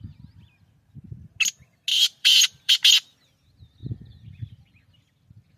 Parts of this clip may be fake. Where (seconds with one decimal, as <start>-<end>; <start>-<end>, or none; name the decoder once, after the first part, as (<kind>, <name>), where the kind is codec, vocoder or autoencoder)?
1.9-2.7 (vocoder, BigVGAN v2)